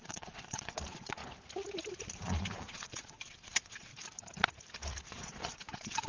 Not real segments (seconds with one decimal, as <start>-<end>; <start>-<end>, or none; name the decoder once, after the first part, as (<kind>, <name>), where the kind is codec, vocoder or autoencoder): 0.0-1.2 (vocoder, Vocos); 2.0-3.9; 5.0-6.1